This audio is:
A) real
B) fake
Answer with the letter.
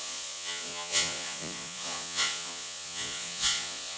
B